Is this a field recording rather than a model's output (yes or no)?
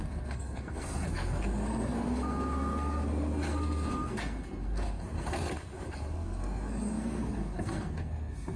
no